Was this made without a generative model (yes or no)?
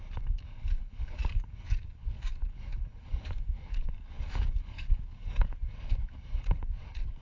no